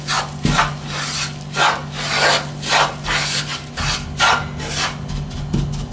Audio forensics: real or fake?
real